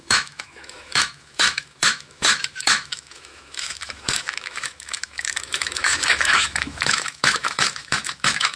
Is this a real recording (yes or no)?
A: no